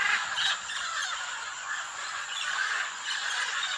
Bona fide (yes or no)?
no